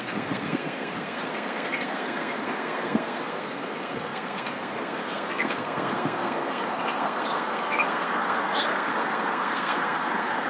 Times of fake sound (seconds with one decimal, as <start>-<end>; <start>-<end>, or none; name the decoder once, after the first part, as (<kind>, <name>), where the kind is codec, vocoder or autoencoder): 0.0-10.5 (codec, SNAC)